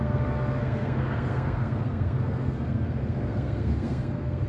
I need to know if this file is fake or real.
fake